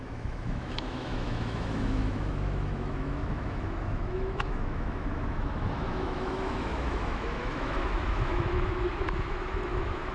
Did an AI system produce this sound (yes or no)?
yes